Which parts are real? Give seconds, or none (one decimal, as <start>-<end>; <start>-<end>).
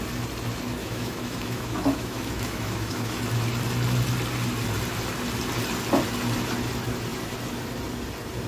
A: 0.0-0.8; 3.2-8.5